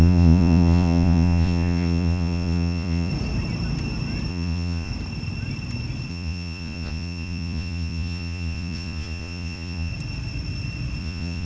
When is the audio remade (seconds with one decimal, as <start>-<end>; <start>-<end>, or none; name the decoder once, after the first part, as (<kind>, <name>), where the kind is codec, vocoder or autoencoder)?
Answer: 0.0-3.1 (vocoder, Vocos); 4.3-4.9; 6.1-9.9; 11.0-11.5